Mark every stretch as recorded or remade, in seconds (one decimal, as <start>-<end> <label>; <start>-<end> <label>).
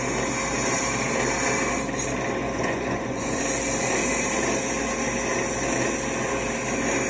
0.0-2.4 recorded; 2.4-3.4 remade; 3.4-7.1 recorded